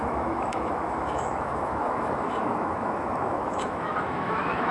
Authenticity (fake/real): fake